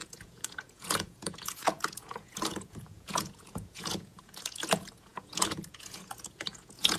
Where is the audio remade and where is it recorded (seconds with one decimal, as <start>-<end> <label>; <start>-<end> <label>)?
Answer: 0.0-7.0 remade